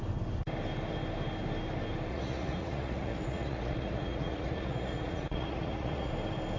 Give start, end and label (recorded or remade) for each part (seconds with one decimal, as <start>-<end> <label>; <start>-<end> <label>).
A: 0.0-2.1 recorded; 2.1-6.1 remade; 6.1-6.6 recorded